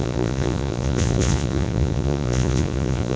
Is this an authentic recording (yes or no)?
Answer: no